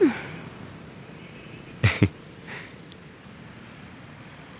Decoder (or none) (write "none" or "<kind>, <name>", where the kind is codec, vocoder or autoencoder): none